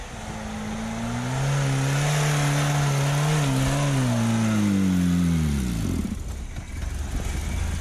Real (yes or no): yes